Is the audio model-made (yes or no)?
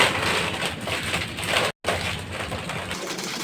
no